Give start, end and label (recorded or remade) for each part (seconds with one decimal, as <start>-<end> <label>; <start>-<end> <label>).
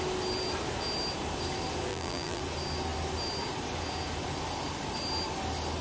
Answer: 0.0-1.9 recorded; 1.9-2.4 remade; 2.4-5.8 recorded